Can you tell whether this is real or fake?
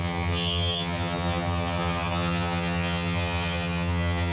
fake